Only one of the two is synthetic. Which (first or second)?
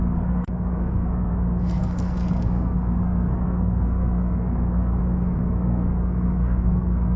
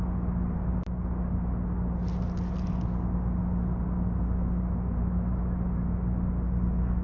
first